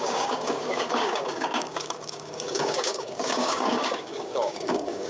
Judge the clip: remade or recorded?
remade